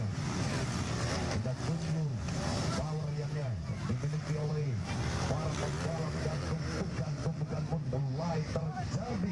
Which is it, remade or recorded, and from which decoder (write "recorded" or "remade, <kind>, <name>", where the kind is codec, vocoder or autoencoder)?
remade, vocoder, BigVGAN v2